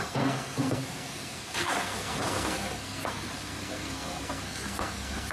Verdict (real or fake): fake